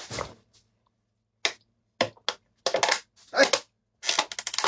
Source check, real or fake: real